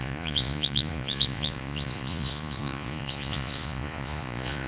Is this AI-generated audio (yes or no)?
yes